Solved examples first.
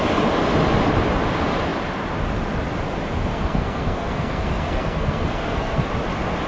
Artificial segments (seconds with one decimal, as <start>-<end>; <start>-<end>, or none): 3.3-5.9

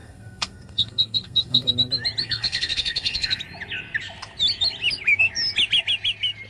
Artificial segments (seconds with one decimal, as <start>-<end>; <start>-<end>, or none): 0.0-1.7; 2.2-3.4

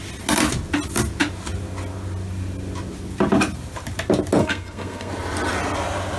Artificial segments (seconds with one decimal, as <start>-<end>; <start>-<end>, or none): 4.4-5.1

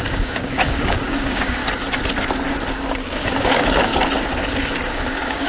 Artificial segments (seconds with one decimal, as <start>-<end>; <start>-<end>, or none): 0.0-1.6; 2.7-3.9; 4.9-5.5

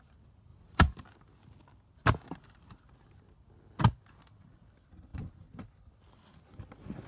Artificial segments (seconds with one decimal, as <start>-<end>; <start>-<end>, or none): 0.5-1.0; 5.1-5.9

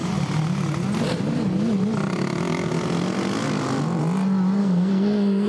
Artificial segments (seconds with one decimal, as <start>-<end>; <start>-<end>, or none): 4.6-5.5